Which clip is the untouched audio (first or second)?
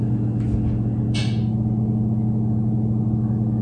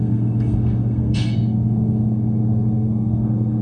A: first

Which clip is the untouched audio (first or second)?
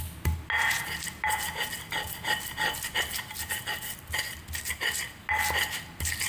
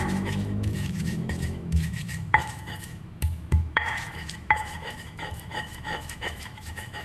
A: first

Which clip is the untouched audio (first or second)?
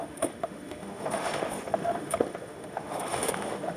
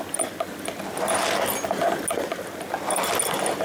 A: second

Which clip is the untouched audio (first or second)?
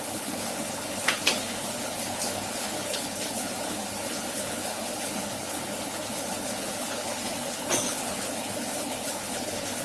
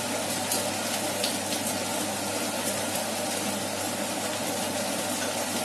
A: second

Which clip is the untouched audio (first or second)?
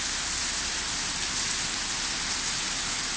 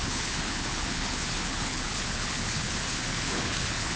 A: first